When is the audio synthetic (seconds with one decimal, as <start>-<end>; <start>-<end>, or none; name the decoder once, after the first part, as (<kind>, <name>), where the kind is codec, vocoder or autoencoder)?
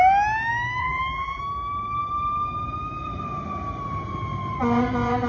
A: 0.8-1.4 (vocoder, BigVGAN v2)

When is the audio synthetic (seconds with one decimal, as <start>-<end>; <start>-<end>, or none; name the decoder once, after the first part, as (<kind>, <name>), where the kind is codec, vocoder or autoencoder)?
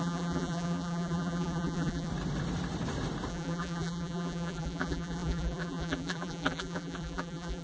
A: 0.0-2.1 (vocoder, BigVGAN v2); 3.3-7.6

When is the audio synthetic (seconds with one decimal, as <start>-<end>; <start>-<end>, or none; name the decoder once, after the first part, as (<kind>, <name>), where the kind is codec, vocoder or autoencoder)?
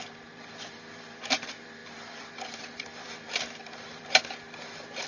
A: 0.0-5.1 (vocoder, BigVGAN v2)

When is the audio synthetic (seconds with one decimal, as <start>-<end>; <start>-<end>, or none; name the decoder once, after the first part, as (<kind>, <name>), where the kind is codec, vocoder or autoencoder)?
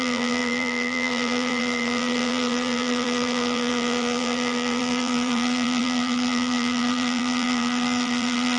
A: 0.0-8.6 (vocoder, BigVGAN v2)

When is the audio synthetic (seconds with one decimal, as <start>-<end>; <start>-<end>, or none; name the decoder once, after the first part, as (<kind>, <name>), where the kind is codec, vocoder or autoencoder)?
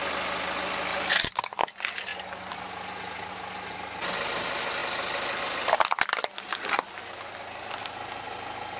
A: 0.9-1.4 (vocoder, BigVGAN v2)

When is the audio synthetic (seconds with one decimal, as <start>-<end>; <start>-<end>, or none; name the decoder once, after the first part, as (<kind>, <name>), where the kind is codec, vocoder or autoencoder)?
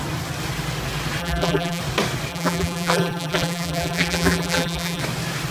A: 1.2-1.8 (vocoder, BigVGAN v2); 2.3-5.0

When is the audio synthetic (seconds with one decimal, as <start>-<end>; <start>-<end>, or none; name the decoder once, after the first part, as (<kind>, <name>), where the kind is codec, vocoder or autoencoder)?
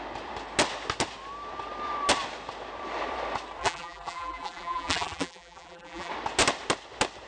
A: 3.6-6.1 (vocoder, BigVGAN v2)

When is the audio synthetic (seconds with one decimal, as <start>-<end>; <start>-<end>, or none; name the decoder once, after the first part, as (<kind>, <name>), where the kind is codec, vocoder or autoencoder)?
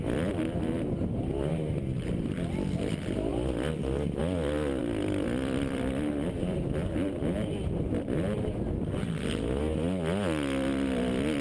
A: 3.3-4.2 (vocoder, BigVGAN v2); 4.8-6.9